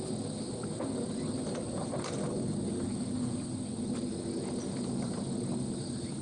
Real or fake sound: real